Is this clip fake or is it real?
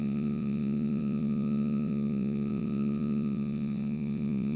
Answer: fake